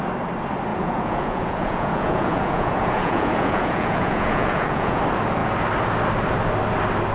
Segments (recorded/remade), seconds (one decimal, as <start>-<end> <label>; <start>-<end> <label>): 0.0-0.7 recorded; 0.7-5.0 remade; 5.0-7.1 recorded